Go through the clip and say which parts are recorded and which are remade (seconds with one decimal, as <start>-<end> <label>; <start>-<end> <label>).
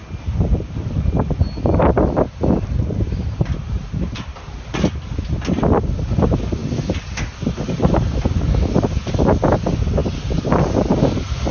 0.0-11.5 recorded